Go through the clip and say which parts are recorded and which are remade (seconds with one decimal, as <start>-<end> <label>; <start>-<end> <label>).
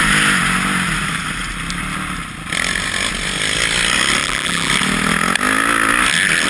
0.0-4.2 recorded; 4.2-4.7 remade; 4.7-6.5 recorded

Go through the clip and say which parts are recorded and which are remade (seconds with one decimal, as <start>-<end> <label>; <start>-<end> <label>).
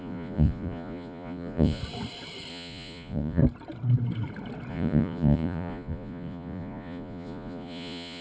0.0-1.8 remade; 1.8-2.5 recorded; 2.5-3.4 remade; 3.4-4.7 recorded; 4.7-8.2 remade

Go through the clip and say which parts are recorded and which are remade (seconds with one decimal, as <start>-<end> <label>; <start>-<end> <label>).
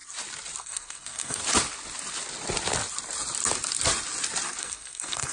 0.0-0.6 recorded; 0.6-1.4 remade; 1.4-4.6 recorded; 4.6-5.3 remade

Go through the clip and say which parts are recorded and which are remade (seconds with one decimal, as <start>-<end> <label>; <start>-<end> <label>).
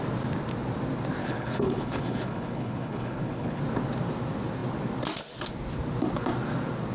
0.0-1.2 recorded; 1.2-3.6 remade; 3.6-6.9 recorded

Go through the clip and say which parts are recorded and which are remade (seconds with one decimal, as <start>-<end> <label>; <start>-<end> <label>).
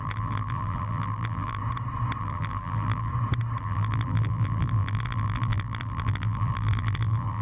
0.0-1.6 remade; 1.6-2.2 recorded; 2.2-3.1 remade; 3.1-3.6 recorded; 3.6-7.4 remade